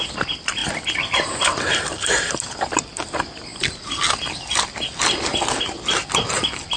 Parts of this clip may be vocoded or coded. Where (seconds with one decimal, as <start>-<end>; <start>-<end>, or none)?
0.6-2.3